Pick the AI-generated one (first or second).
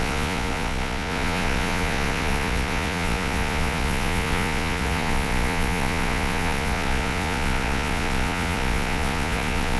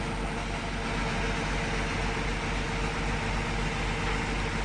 first